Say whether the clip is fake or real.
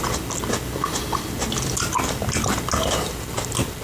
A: real